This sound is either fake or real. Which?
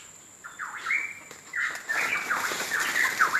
fake